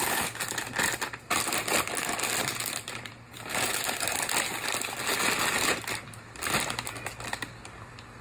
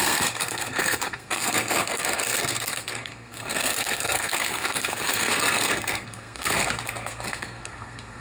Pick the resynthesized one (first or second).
second